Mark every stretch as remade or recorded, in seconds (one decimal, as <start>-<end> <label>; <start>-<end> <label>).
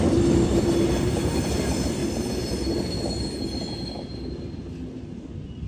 0.0-2.0 remade; 2.0-5.7 recorded